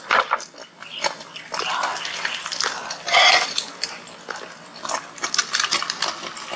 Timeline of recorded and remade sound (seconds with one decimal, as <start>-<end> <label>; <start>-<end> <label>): 0.0-6.6 recorded